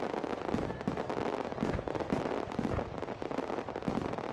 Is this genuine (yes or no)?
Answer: yes